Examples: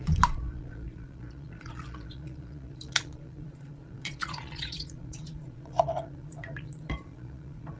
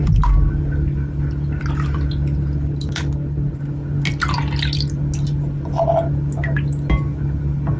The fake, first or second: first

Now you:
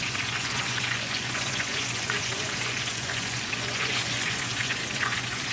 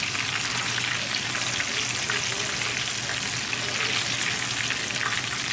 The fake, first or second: first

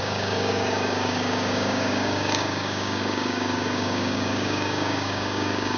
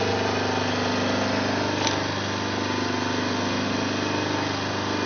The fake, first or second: first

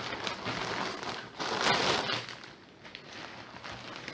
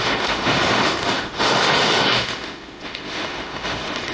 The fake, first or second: second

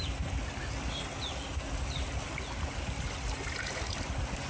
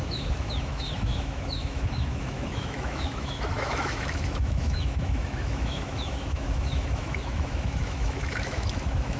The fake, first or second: second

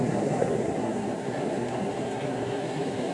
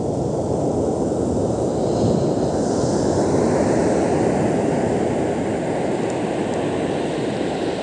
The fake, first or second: first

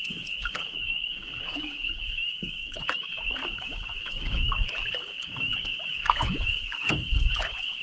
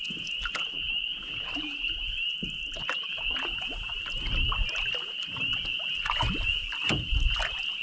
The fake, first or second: first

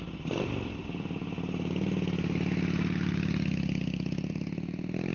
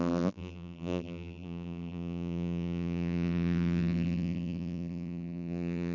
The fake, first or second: second